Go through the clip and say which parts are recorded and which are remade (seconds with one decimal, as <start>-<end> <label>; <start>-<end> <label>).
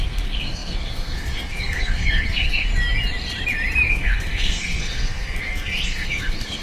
0.0-2.7 remade; 2.7-3.9 recorded; 3.9-6.6 remade